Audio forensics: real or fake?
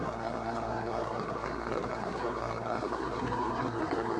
fake